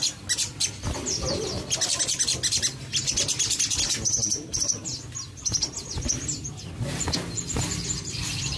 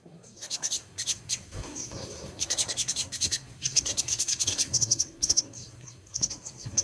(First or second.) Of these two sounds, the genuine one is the first